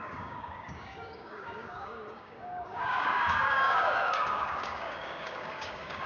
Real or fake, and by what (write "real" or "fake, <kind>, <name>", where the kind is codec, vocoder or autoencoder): fake, codec, DAC